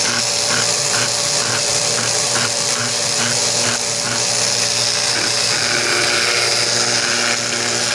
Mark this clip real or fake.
real